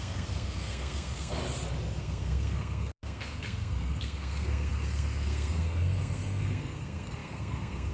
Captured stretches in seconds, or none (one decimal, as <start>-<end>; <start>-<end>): 1.4-2.0

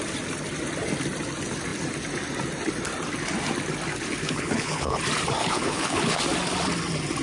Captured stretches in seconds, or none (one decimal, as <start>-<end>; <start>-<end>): 0.0-4.2; 5.0-5.4; 6.2-7.2

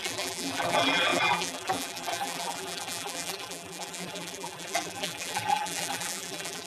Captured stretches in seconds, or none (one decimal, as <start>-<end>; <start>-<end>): none

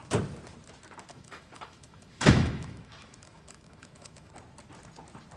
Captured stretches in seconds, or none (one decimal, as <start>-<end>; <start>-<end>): 0.0-1.1; 4.3-5.4

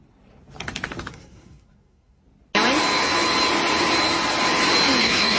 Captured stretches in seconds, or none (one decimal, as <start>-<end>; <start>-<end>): 0.0-1.1; 2.2-5.0

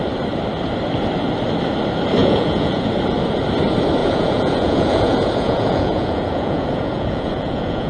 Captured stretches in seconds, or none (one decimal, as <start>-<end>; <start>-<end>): 0.0-2.2; 2.9-4.0

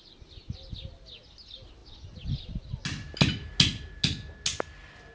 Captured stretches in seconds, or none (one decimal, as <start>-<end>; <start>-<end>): 0.0-5.1

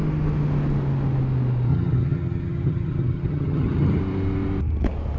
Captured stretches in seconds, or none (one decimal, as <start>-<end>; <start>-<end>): 0.0-1.7; 4.0-5.2